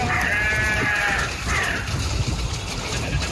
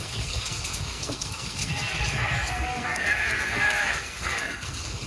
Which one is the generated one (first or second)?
second